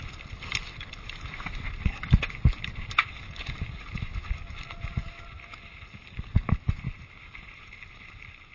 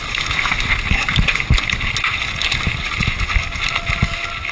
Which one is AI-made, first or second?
first